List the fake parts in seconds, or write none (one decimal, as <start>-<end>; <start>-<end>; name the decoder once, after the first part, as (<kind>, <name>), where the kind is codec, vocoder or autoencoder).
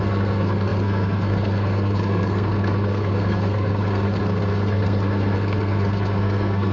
0.0-6.7 (codec, SNAC)